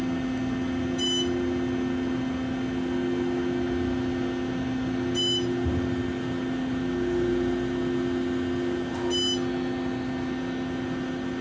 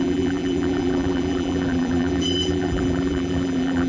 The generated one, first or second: second